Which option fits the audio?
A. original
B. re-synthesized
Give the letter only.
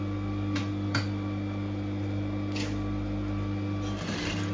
A